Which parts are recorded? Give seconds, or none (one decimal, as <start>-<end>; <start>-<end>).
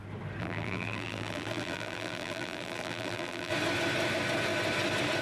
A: 0.0-0.4; 3.5-5.2